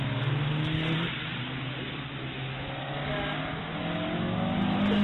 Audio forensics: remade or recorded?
recorded